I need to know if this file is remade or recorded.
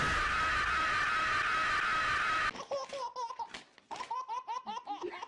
recorded